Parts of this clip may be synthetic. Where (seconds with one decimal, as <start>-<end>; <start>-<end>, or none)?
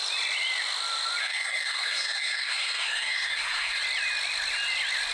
1.2-3.8